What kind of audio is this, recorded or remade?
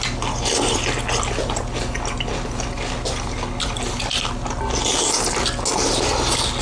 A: recorded